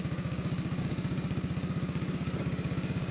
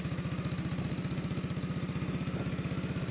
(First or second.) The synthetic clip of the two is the first